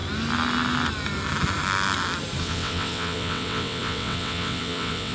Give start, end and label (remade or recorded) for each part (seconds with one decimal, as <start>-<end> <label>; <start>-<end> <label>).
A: 0.0-2.4 recorded; 2.4-5.1 remade